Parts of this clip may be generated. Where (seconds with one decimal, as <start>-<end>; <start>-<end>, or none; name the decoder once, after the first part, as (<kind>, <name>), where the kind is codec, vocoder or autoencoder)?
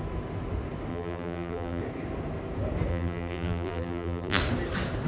0.9-1.8 (vocoder, BigVGAN v2); 2.9-4.4